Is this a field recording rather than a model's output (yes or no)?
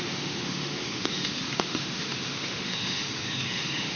no